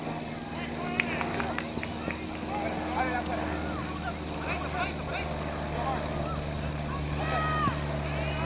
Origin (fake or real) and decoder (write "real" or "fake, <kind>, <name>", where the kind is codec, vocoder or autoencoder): real